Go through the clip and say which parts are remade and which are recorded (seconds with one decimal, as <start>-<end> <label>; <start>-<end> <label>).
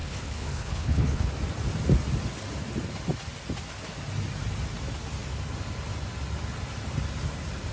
0.0-1.3 remade; 1.3-7.7 recorded